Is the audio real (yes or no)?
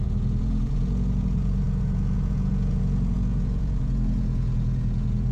no